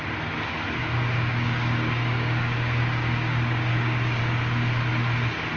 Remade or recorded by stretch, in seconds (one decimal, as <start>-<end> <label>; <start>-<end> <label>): 0.0-0.8 recorded; 0.8-4.2 remade; 4.2-5.6 recorded